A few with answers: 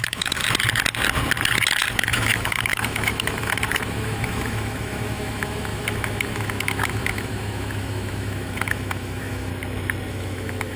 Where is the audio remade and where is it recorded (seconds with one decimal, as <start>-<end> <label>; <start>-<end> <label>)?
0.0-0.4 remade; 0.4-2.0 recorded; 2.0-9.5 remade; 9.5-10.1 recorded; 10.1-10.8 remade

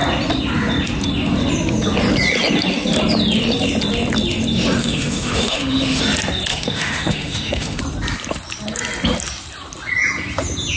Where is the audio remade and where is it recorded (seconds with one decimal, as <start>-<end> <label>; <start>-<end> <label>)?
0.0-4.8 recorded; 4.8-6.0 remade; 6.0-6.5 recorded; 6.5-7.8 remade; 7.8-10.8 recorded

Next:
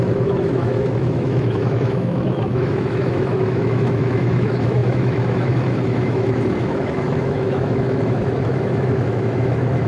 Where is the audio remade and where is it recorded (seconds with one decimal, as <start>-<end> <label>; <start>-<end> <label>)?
0.0-9.9 remade

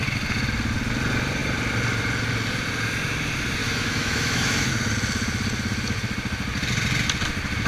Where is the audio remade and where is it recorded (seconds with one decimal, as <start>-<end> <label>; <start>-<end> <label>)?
0.0-3.6 recorded; 3.6-4.7 remade; 4.7-7.7 recorded

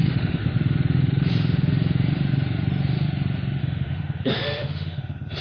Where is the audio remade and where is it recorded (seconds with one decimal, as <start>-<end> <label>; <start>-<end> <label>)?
0.0-0.4 remade; 0.4-3.6 recorded; 3.6-5.4 remade